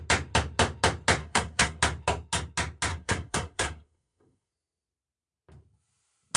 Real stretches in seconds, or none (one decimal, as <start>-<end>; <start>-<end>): 0.0-1.2; 1.8-2.9; 4.5-6.4